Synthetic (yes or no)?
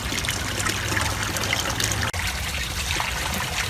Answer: no